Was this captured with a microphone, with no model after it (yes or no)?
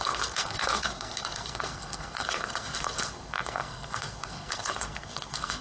no